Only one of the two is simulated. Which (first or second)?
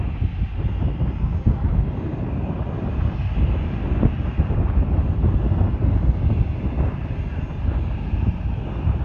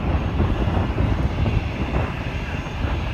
second